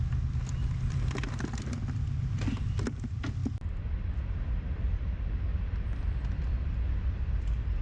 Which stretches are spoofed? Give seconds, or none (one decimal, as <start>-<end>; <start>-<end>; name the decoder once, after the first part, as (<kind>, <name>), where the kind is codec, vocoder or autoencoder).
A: 0.0-3.4 (vocoder, BigVGAN v2); 6.0-7.8